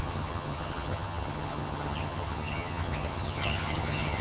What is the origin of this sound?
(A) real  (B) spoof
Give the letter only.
B